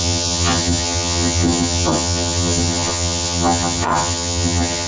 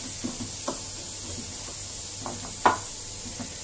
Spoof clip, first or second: first